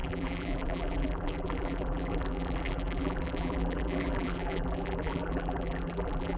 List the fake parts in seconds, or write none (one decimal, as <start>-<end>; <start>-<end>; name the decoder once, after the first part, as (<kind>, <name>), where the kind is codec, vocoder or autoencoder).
0.0-6.4 (vocoder, BigVGAN v2)